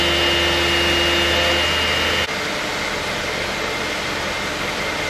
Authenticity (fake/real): real